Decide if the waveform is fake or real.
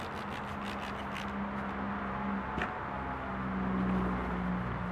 real